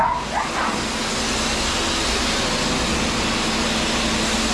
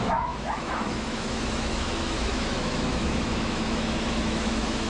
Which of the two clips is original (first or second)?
first